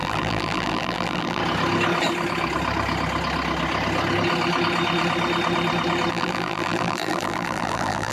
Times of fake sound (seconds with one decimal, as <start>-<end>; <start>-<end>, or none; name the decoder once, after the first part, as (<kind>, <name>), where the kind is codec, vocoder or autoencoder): 0.0-1.4 (vocoder, BigVGAN v2); 6.1-8.1